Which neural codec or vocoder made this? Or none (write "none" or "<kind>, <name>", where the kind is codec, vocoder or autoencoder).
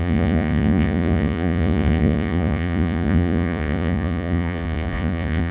vocoder, Vocos